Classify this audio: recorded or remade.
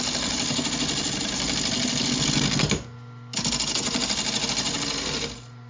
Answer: recorded